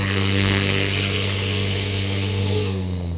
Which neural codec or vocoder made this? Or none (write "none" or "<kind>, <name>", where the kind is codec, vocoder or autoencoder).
codec, SNAC